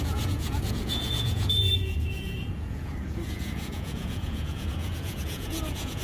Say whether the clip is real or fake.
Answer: fake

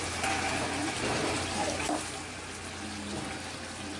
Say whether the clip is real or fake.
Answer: real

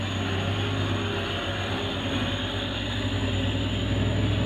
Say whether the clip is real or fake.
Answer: real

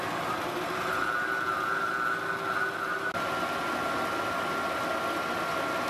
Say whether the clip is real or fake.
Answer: real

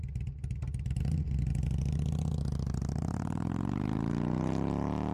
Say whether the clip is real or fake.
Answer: real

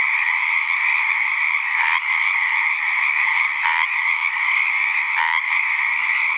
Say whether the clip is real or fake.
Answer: real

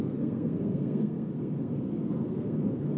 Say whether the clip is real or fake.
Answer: fake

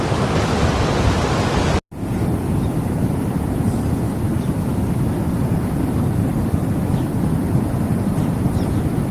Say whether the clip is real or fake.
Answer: real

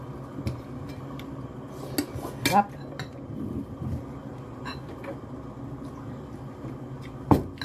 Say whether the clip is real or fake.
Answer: real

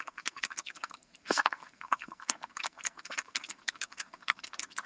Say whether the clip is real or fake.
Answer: fake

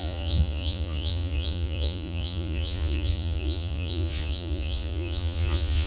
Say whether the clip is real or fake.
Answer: fake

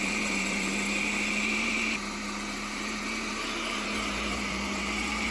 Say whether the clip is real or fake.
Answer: fake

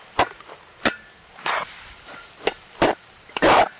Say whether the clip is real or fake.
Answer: fake